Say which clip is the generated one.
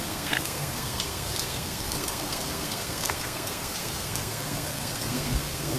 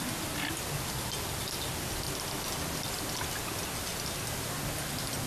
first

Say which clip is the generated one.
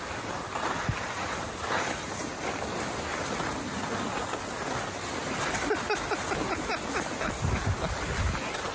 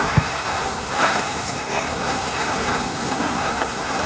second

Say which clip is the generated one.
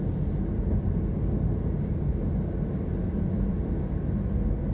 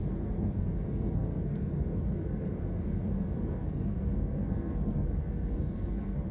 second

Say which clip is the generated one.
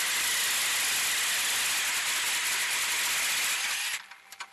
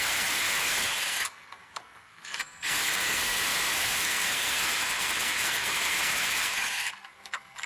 second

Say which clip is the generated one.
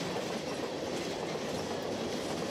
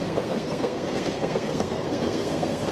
second